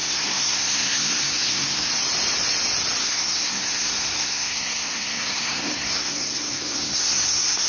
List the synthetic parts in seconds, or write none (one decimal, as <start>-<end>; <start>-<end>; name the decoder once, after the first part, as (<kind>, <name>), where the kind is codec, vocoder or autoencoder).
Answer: 0.0-1.9 (codec, SNAC); 3.0-7.7